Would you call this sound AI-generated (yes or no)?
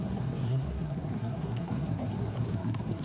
yes